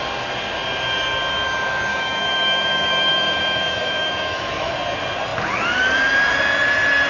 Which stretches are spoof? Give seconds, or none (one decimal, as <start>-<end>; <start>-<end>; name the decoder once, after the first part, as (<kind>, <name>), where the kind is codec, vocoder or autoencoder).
1.9-4.7 (autoencoder, DAC-VAE)